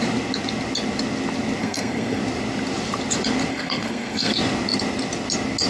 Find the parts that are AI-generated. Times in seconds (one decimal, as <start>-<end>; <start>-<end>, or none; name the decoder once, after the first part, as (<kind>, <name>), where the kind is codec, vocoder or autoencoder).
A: 1.6-2.2 (codec, SNAC); 3.5-4.3